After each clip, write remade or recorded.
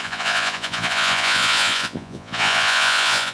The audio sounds remade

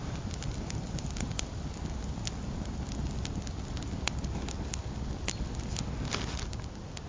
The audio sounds recorded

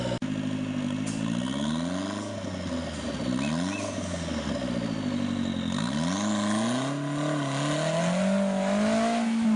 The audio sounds recorded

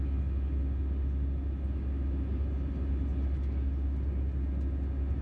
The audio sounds recorded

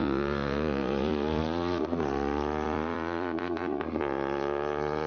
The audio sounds remade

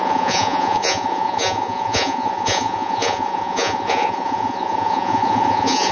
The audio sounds remade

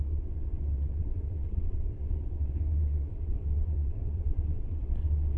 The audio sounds remade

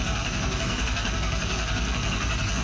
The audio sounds remade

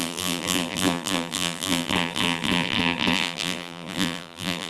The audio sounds remade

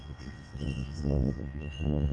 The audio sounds remade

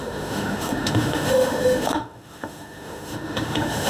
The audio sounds remade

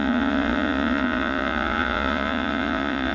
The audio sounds remade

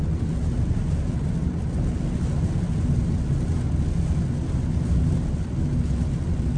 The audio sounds recorded